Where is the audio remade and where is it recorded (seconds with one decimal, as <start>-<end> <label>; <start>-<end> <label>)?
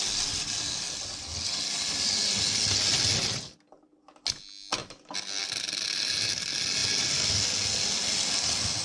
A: 0.0-8.8 recorded